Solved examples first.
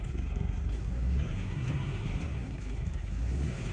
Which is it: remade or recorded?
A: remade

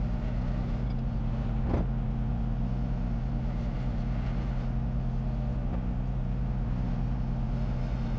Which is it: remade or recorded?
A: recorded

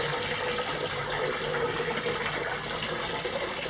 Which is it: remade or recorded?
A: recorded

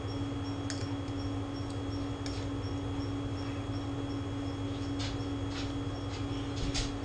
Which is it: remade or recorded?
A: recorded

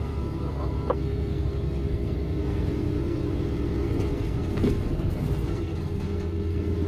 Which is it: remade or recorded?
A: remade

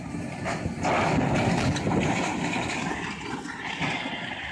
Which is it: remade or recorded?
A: recorded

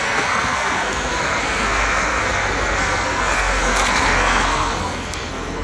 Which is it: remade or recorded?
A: remade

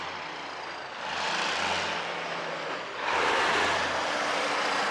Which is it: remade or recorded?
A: recorded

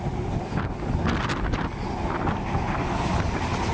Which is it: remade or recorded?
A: recorded